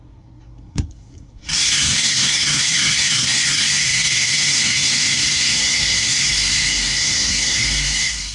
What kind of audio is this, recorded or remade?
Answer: remade